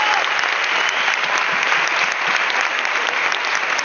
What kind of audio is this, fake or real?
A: real